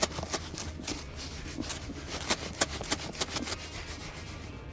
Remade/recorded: recorded